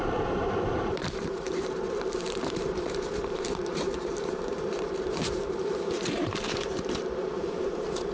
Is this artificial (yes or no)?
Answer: yes